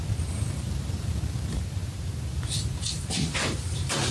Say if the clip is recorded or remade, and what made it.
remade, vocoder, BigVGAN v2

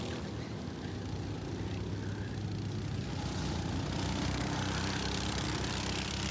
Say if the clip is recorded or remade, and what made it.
recorded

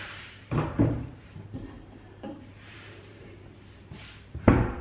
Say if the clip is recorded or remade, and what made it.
remade, vocoder, BigVGAN v2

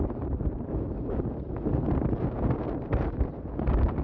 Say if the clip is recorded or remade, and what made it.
remade, vocoder, BigVGAN v2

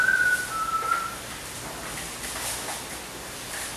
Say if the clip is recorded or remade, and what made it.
recorded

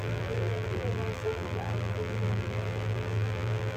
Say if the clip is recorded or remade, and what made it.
remade, vocoder, BigVGAN v2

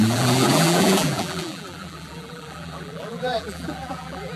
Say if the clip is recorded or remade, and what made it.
remade, vocoder, BigVGAN v2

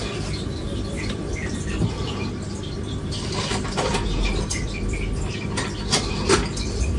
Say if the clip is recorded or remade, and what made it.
remade, vocoder, BigVGAN v2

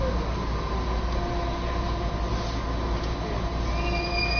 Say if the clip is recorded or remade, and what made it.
recorded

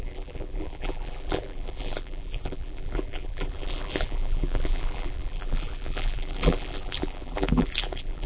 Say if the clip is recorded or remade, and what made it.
remade, vocoder, BigVGAN v2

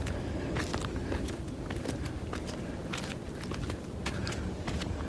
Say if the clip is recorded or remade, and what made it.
recorded